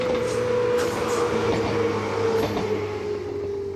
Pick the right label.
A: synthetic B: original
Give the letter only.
B